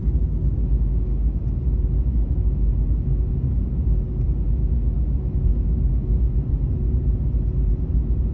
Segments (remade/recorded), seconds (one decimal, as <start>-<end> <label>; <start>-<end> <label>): 0.0-1.4 remade; 1.4-6.0 recorded; 6.0-6.5 remade; 6.5-8.3 recorded